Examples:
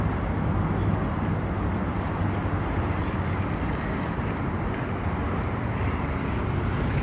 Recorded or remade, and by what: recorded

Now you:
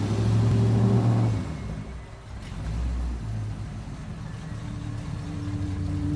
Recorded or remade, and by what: recorded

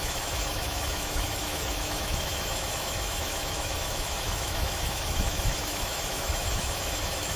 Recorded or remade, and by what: remade, autoencoder, DAC-VAE